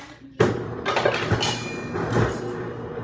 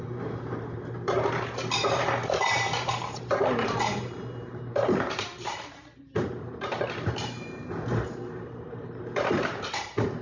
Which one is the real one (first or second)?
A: first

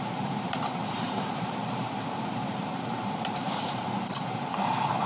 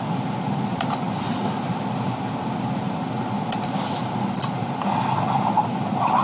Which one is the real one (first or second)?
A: second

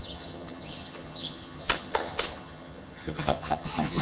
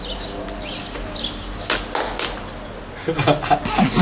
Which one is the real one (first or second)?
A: second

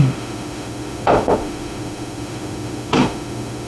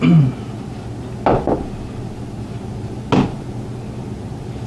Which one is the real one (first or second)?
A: second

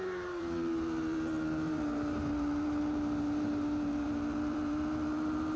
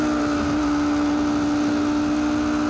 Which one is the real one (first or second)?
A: second